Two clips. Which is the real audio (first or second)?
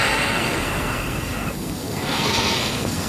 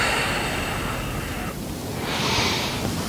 second